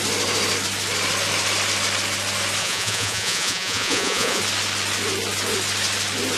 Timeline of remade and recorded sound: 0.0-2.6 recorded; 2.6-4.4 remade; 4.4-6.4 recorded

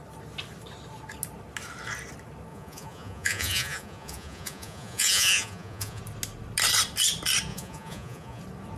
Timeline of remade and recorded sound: 0.0-2.5 recorded; 2.5-6.0 remade; 6.0-7.5 recorded; 7.5-8.4 remade; 8.4-8.8 recorded

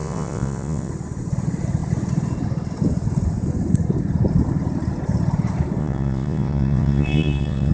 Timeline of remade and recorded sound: 0.0-0.9 remade; 0.9-5.8 recorded; 5.8-7.7 remade

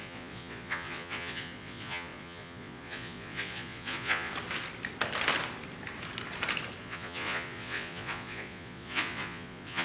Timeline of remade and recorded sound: 0.0-4.3 remade; 4.3-6.8 recorded; 6.8-9.8 remade

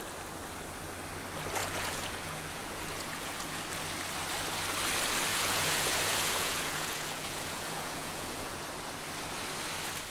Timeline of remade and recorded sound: 0.0-1.6 recorded; 1.6-3.6 remade; 3.6-5.3 recorded; 5.3-8.6 remade; 8.6-10.1 recorded

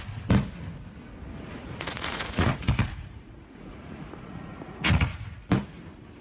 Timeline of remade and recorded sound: 0.0-1.6 recorded; 1.6-5.3 remade; 5.3-6.2 recorded

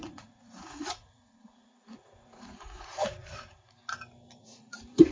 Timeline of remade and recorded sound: 0.0-3.8 remade; 3.8-4.4 recorded; 4.4-5.1 remade

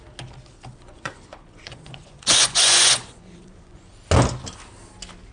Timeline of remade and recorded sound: 0.0-0.7 recorded; 0.7-3.9 remade; 3.9-5.3 recorded